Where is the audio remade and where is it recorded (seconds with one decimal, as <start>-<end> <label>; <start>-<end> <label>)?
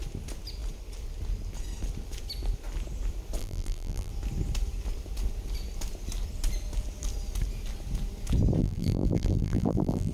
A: 0.0-3.4 recorded; 3.4-4.1 remade; 4.1-8.6 recorded; 8.6-10.1 remade